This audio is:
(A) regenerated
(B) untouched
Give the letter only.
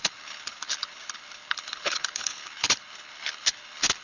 A